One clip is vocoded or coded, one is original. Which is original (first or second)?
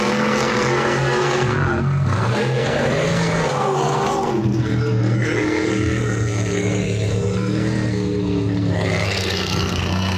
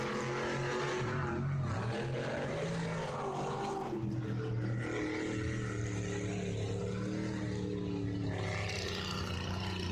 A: second